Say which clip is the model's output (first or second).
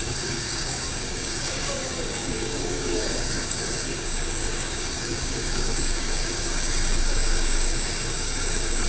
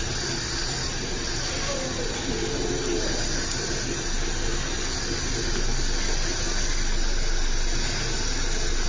first